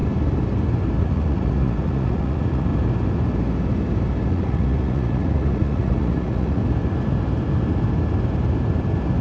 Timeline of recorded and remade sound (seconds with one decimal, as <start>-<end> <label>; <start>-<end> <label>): 0.0-1.0 recorded; 1.0-2.7 remade; 2.7-4.3 recorded; 4.3-6.6 remade; 6.6-9.2 recorded